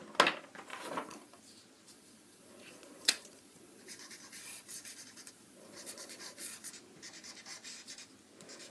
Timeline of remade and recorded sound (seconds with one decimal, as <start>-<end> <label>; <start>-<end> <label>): 0.0-0.7 recorded; 0.7-1.4 remade; 1.4-1.9 recorded; 1.9-6.7 remade; 6.7-8.7 recorded